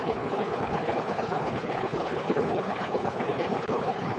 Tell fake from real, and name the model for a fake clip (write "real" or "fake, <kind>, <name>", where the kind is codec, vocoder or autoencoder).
fake, codec, HILCodec